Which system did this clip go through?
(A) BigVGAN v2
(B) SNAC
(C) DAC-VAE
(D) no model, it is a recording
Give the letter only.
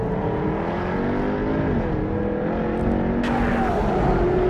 D